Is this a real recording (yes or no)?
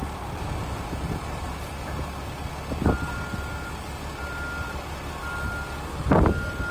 yes